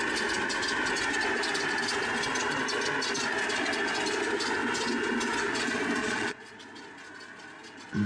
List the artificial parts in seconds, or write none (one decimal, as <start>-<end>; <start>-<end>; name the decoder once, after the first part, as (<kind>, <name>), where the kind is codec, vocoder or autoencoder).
6.0-6.6 (vocoder, Vocos)